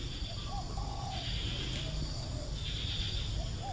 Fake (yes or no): no